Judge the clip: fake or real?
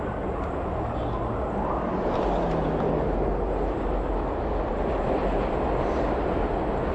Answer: real